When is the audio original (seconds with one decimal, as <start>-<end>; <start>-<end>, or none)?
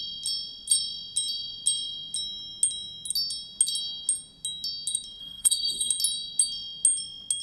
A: 0.0-5.2; 5.9-7.4